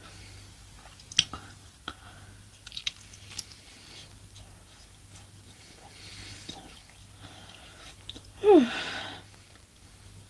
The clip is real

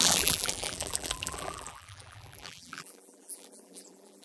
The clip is fake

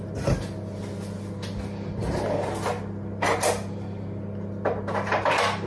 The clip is real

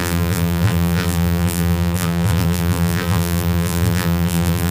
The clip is fake